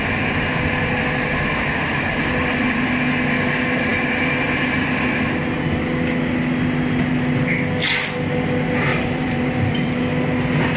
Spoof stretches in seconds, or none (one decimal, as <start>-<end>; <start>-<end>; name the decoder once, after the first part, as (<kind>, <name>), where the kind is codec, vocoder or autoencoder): 8.9-10.0 (vocoder, BigVGAN v2)